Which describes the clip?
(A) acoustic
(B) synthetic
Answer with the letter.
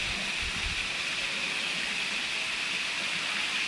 A